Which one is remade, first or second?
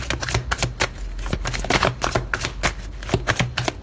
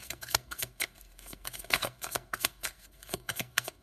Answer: second